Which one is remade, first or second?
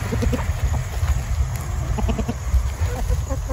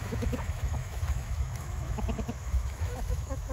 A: second